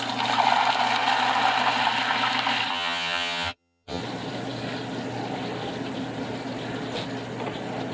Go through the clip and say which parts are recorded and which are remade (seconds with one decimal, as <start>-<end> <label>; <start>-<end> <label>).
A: 0.0-2.7 recorded; 2.7-4.0 remade; 4.0-7.9 recorded

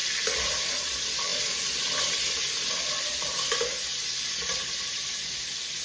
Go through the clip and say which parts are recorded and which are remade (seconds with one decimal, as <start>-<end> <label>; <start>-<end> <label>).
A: 0.0-5.8 recorded

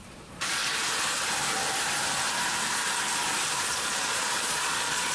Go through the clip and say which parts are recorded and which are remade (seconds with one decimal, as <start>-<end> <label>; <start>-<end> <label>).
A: 0.0-0.6 remade; 0.6-3.7 recorded; 3.7-5.1 remade

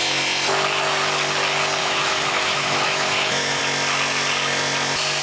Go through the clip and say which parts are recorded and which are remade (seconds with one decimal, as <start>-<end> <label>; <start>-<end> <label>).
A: 0.0-1.8 recorded; 1.8-3.6 remade; 3.6-5.2 recorded

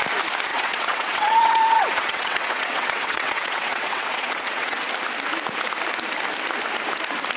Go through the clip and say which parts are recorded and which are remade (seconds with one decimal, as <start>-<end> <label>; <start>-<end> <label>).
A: 0.0-0.5 recorded; 0.5-4.9 remade; 4.9-7.4 recorded

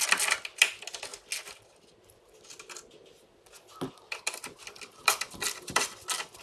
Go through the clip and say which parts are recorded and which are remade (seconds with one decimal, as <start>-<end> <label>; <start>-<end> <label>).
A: 0.0-6.4 recorded